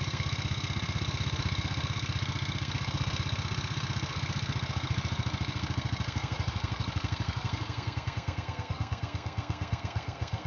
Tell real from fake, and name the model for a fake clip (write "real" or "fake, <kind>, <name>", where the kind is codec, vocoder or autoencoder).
fake, codec, SNAC